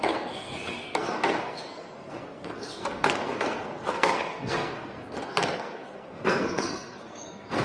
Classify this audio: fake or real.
fake